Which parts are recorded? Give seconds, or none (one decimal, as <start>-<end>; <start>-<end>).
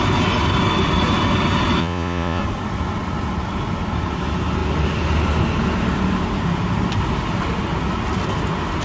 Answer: 0.0-1.8; 2.4-8.8